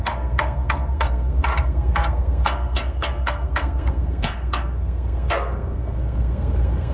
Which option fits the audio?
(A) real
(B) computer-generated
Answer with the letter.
B